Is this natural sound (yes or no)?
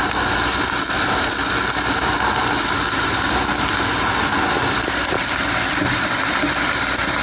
yes